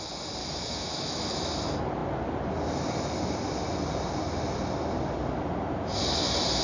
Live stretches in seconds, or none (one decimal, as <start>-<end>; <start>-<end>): 0.0-0.4; 1.5-6.6